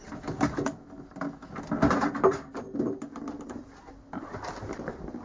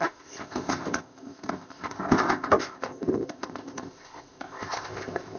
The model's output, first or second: second